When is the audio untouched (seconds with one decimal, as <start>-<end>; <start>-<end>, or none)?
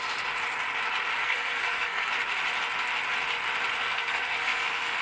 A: 0.0-1.2; 2.1-3.8